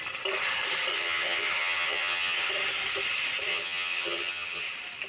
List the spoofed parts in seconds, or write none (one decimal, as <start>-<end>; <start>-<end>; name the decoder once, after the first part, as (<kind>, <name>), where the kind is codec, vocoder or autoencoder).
0.9-2.5 (vocoder, HiFi-GAN); 3.5-4.6